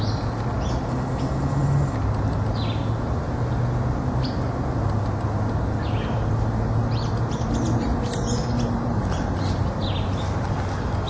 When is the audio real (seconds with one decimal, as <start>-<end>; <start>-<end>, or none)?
0.0-11.1